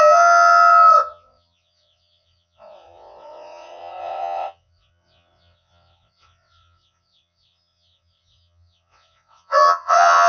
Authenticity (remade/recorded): remade